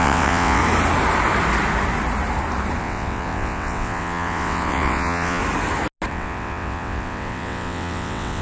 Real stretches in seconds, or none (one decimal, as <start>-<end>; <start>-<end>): 0.6-2.8; 5.4-6.1